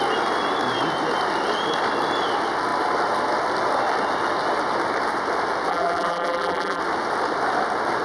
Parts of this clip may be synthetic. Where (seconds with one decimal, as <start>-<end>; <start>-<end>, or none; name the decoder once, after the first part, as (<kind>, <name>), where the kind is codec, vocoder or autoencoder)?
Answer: 5.7-6.8 (vocoder, BigVGAN v2)